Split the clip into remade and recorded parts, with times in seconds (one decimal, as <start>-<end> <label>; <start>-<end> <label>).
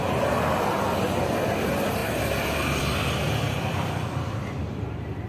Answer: 0.0-5.3 remade